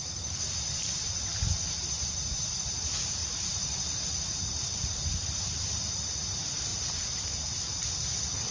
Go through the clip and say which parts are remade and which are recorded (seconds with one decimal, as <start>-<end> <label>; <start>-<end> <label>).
0.0-3.2 recorded; 3.2-5.9 remade; 5.9-8.5 recorded